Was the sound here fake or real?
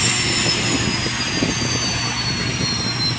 real